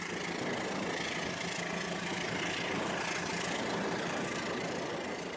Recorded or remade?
recorded